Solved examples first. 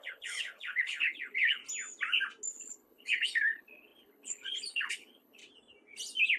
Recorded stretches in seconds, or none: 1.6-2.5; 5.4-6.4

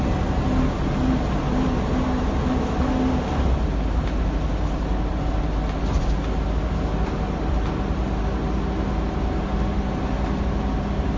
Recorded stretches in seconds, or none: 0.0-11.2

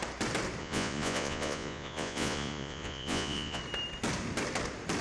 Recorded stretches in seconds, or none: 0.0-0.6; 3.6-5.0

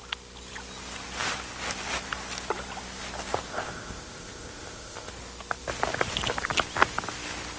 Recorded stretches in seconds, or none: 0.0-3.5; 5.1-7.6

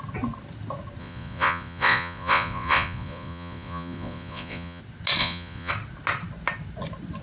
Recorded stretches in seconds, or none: 0.0-1.0; 4.8-5.2; 5.7-7.2

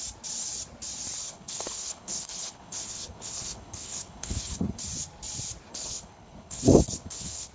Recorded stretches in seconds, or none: 0.0-1.2; 4.8-5.7

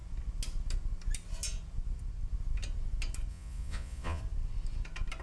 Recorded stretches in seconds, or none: 0.0-3.3; 4.2-5.2

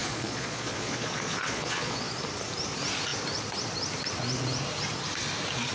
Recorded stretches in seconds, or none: 2.1-5.7